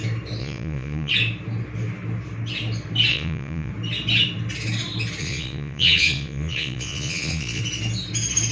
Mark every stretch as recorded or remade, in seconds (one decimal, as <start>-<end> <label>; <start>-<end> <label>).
0.0-0.4 recorded; 0.4-1.1 remade; 1.1-3.1 recorded; 3.1-3.7 remade; 3.7-5.2 recorded; 5.2-7.6 remade; 7.6-8.5 recorded